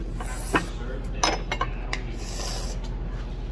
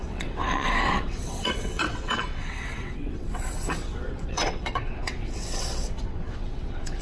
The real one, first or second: first